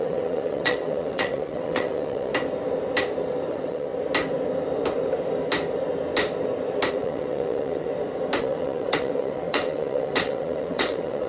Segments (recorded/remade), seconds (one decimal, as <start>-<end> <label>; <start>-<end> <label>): 0.0-2.3 remade; 2.3-3.5 recorded; 3.5-3.9 remade; 3.9-6.9 recorded; 6.9-7.9 remade; 7.9-8.4 recorded; 8.4-11.3 remade